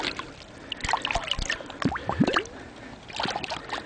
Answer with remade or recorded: recorded